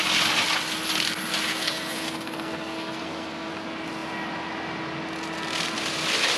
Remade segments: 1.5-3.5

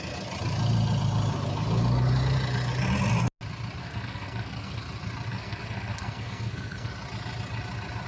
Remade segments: 3.8-4.8; 5.3-6.9

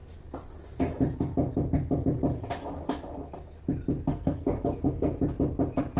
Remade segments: 4.1-5.2

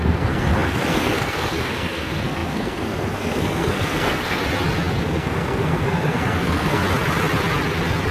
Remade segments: 0.0-4.4; 5.0-6.8

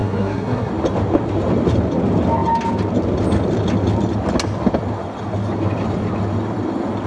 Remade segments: 0.0-0.7

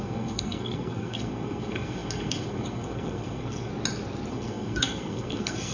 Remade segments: 0.0-3.7; 4.3-5.7